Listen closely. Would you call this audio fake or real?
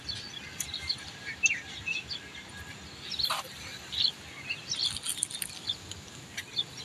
real